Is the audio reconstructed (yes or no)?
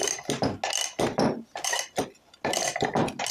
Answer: no